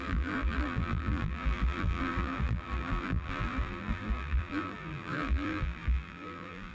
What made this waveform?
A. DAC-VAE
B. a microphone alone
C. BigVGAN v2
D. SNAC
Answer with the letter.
C